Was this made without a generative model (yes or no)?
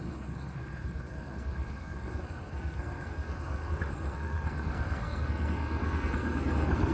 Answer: no